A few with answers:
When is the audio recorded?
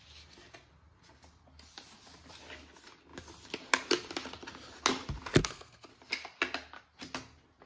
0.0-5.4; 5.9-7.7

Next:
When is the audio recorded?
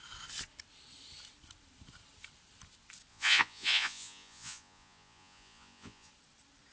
0.0-3.1; 6.1-6.7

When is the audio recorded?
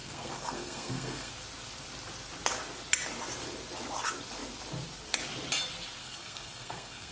1.3-6.0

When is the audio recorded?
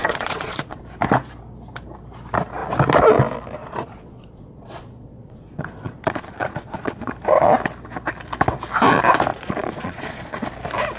0.8-3.6; 7.1-9.3; 10.5-11.0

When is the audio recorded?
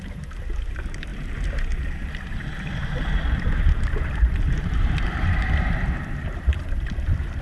none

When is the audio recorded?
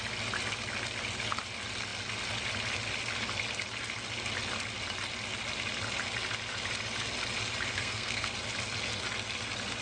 0.0-7.7; 8.3-9.8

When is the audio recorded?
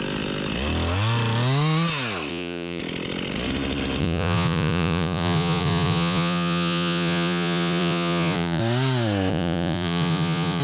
0.0-2.3; 2.8-4.0; 8.6-9.3